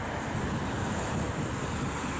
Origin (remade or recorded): recorded